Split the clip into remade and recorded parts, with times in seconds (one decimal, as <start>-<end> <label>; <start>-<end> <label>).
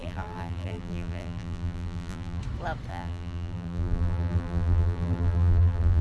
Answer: 0.0-2.4 remade; 2.4-2.9 recorded; 2.9-6.0 remade